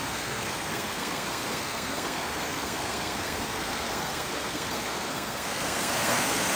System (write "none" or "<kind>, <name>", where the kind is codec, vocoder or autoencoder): codec, SNAC